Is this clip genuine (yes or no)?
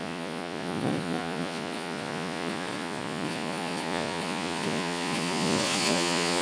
no